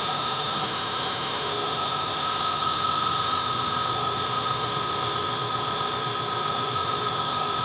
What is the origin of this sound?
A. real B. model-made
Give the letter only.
B